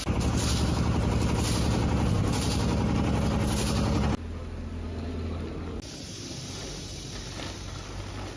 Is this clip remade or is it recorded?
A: recorded